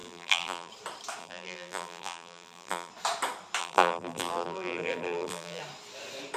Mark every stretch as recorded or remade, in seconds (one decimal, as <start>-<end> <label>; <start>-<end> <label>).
0.0-0.7 remade; 0.7-1.2 recorded; 1.2-2.9 remade; 2.9-3.6 recorded; 3.6-5.6 remade; 5.6-6.4 recorded